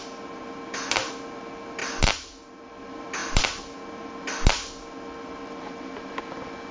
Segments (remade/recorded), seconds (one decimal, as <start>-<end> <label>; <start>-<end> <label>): 0.0-6.7 recorded